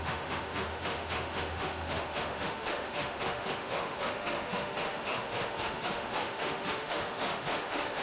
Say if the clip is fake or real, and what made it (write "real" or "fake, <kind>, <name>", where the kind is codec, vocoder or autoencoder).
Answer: fake, autoencoder, DAC-VAE